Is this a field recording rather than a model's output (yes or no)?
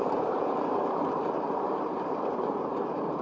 no